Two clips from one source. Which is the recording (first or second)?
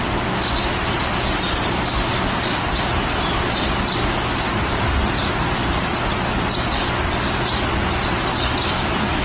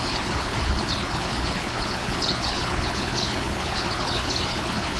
first